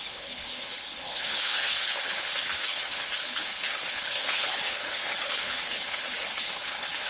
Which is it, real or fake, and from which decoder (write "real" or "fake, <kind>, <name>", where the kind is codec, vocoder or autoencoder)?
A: fake, codec, HILCodec